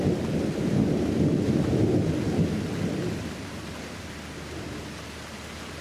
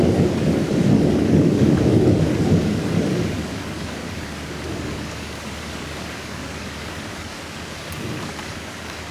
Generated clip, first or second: second